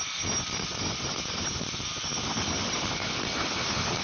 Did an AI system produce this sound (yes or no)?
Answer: no